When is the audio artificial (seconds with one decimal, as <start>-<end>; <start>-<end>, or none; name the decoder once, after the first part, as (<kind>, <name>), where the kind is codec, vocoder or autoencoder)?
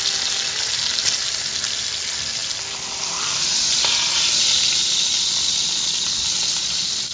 none